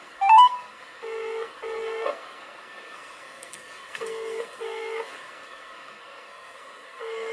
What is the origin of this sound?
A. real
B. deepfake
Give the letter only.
B